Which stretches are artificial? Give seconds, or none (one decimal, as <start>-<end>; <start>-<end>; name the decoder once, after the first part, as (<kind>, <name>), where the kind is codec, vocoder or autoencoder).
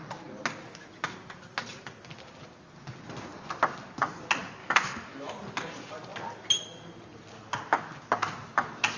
4.6-5.3 (autoencoder, DAC-VAE)